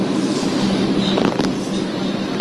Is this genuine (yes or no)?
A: yes